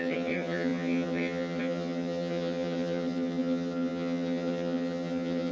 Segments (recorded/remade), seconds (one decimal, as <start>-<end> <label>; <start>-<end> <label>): 0.0-5.5 remade